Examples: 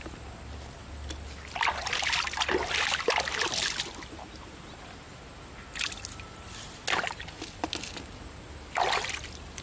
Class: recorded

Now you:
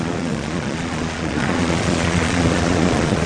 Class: remade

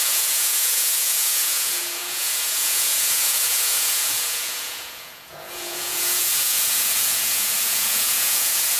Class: remade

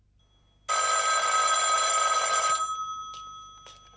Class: recorded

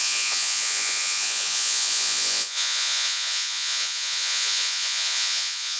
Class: remade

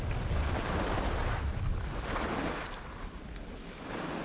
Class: recorded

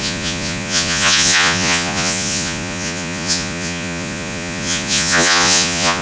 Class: remade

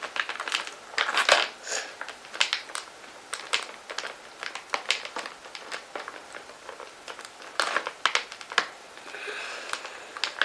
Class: recorded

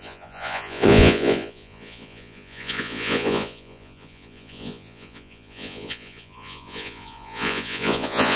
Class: remade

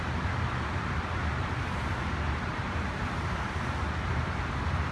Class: recorded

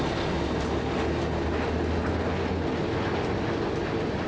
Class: recorded